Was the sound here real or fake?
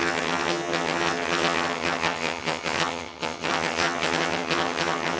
fake